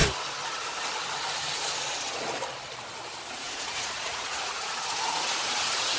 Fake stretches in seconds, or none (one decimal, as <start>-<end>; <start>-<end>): 3.3-6.0

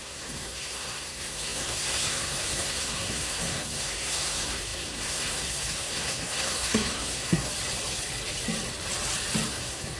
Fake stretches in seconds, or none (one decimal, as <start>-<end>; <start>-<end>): 0.0-7.5; 9.5-10.0

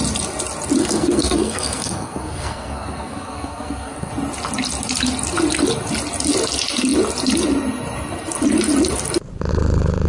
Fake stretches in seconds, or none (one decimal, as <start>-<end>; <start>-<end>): 0.8-4.1

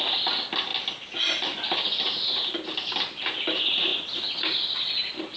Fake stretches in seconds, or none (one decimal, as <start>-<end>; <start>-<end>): none

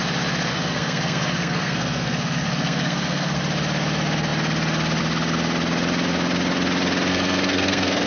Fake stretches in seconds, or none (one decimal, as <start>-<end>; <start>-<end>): 0.5-3.4; 7.1-8.1